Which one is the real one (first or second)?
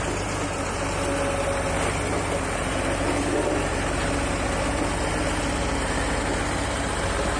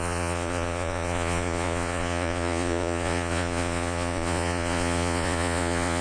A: first